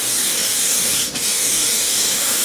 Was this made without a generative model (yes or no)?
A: no